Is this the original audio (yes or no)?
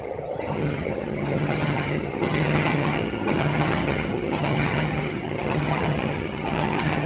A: no